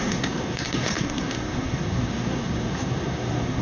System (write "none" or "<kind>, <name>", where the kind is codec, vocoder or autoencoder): codec, SNAC